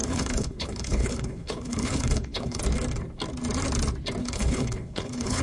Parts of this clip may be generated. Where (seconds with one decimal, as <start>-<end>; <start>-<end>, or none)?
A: 0.0-2.6; 4.2-5.4